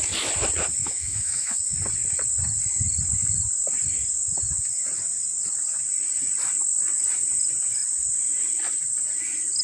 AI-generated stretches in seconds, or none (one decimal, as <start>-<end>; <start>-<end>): 0.8-1.6